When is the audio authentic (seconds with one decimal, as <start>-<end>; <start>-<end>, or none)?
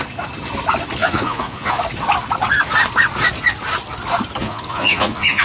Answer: 0.0-1.0; 1.8-4.4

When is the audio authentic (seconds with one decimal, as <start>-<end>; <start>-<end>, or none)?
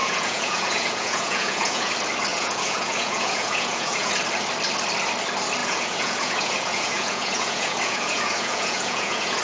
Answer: 1.9-2.3; 4.1-5.6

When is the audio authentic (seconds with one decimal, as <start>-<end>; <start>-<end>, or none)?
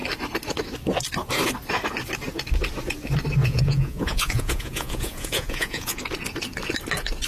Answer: 0.0-3.4; 6.0-7.3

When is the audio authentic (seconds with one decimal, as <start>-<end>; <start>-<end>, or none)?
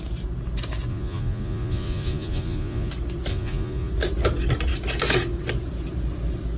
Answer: 0.0-0.9; 2.9-3.3; 3.9-6.6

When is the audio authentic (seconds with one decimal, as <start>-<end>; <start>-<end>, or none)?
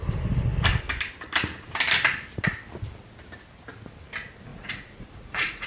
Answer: 0.0-4.5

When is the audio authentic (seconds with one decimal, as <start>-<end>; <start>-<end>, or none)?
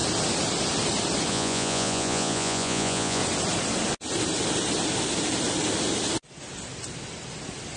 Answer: 0.0-1.3; 3.2-7.8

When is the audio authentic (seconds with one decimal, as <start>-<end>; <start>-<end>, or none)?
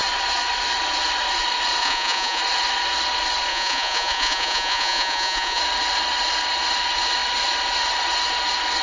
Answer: 0.0-1.8; 2.4-3.5; 5.6-8.8